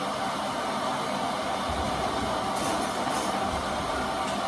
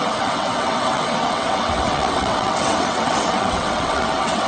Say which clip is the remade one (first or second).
second